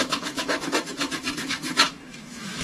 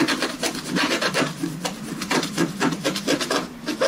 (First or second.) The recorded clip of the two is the second